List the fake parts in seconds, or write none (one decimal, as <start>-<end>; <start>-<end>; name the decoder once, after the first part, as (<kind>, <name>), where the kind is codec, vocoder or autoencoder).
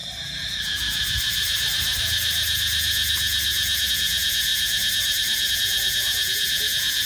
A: 3.9-4.5 (vocoder, Vocos); 5.5-7.1